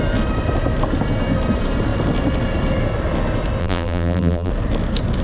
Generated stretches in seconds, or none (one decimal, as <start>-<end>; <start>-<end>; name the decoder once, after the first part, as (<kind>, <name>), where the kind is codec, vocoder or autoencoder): 3.6-4.5 (vocoder, BigVGAN v2)